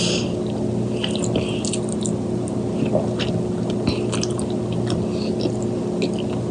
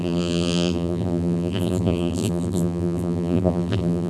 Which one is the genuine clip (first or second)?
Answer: first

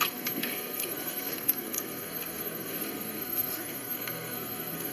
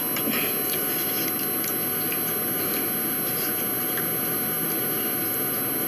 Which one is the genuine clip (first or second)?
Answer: second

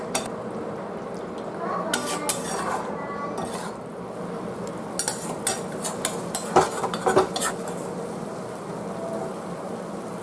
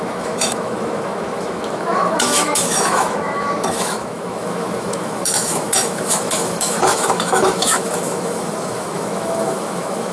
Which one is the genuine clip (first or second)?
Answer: first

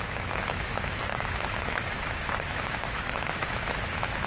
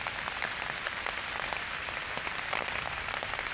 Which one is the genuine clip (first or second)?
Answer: second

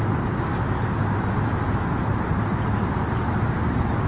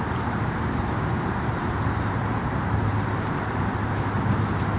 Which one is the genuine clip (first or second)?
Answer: first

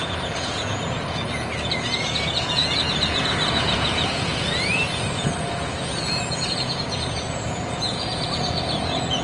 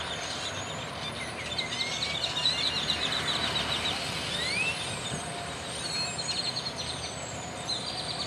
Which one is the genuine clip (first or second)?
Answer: second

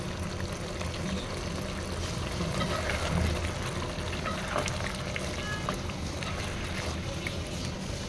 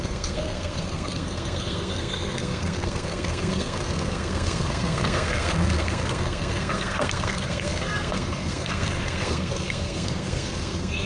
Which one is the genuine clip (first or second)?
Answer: first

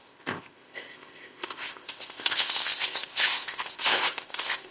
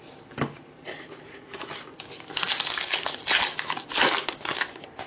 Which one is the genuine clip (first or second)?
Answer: second